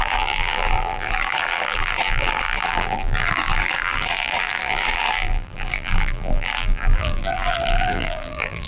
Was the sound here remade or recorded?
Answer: remade